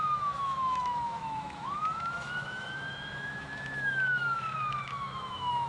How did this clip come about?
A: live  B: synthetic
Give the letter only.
B